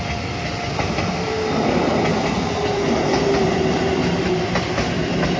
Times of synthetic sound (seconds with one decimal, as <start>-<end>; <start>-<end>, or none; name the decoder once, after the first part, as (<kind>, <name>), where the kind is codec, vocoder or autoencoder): 2.1-5.4 (vocoder, BigVGAN v2)